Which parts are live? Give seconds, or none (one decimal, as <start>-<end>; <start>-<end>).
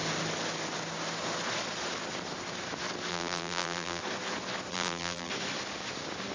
0.0-3.1; 4.0-4.7; 5.3-6.3